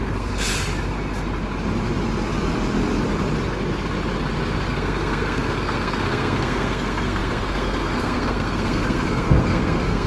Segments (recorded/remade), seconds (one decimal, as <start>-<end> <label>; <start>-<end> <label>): 0.0-0.5 remade; 0.5-4.7 recorded; 4.7-10.1 remade